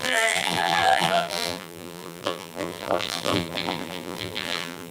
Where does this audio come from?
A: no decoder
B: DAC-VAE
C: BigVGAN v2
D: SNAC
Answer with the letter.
C